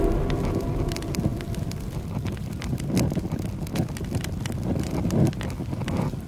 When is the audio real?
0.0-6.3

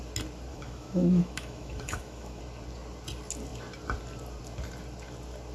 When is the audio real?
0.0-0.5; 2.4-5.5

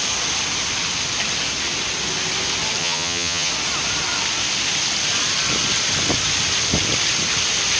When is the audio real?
0.0-2.8; 3.5-7.8

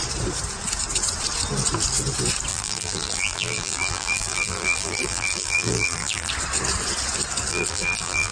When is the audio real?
0.0-2.5; 6.3-7.5